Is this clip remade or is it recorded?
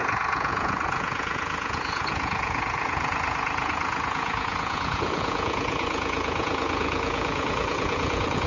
remade